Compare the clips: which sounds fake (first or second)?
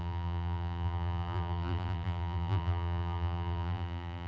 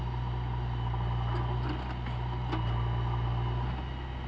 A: first